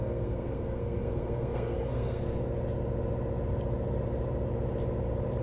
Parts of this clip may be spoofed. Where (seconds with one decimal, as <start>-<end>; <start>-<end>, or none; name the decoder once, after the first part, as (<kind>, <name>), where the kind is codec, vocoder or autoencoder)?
0.0-2.2 (codec, SNAC)